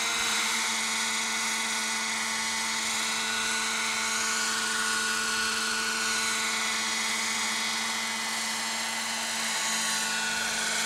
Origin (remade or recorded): recorded